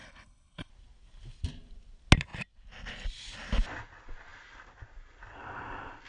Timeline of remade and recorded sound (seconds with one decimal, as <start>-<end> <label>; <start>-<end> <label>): 0.0-0.7 remade; 0.7-6.1 recorded